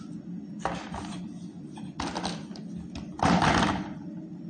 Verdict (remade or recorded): recorded